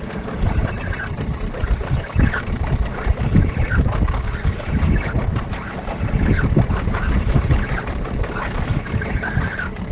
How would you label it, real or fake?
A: fake